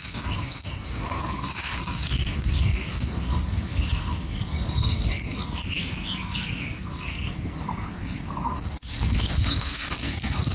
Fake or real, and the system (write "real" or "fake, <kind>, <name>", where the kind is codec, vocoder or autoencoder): fake, codec, SNAC